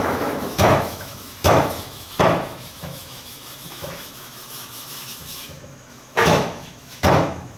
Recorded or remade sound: remade